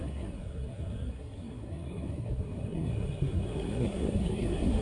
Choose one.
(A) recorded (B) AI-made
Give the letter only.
B